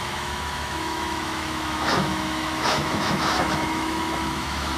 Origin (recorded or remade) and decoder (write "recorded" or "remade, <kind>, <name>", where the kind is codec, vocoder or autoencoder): remade, autoencoder, DAC-VAE